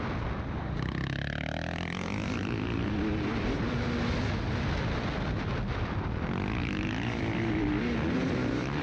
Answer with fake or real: real